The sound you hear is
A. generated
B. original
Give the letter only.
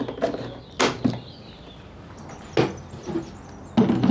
B